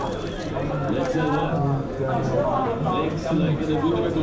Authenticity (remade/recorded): recorded